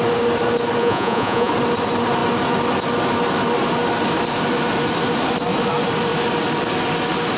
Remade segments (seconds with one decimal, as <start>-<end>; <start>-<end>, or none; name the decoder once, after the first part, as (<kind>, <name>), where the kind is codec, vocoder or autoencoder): 0.8-1.5 (vocoder, Vocos)